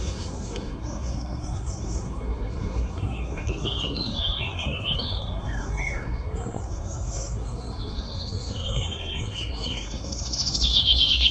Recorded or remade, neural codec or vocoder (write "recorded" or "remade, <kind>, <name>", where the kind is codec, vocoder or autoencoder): remade, codec, SNAC